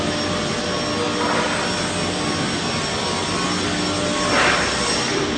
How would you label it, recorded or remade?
recorded